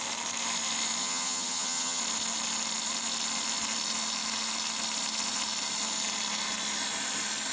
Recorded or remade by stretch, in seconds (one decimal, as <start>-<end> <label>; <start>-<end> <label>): 0.0-1.0 recorded; 1.0-2.0 remade; 2.0-7.5 recorded